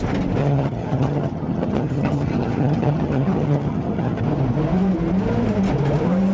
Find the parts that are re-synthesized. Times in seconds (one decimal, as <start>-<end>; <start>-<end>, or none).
0.4-4.2